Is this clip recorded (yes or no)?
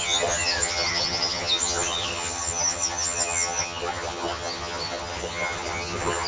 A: no